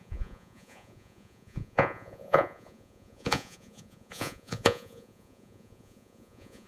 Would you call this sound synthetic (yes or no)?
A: yes